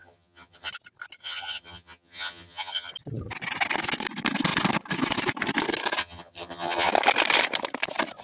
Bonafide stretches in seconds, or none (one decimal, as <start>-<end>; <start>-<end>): 0.7-1.2; 2.9-6.0; 6.9-8.2

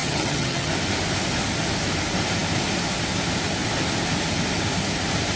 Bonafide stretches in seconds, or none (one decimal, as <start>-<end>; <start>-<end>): 0.7-5.4

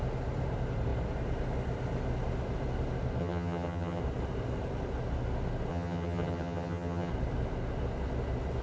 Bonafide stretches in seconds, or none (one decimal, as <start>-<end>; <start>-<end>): 0.0-3.2; 4.0-5.7; 7.1-8.6

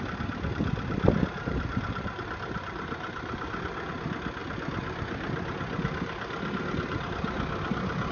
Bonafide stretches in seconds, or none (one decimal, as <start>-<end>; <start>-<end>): 0.0-8.1

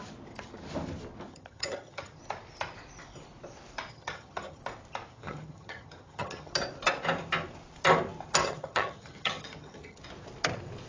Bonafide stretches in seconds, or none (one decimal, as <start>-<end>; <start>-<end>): 0.0-1.3; 2.2-3.9; 4.6-5.1; 6.5-8.4; 10.0-10.9